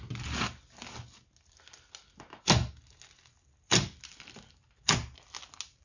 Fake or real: real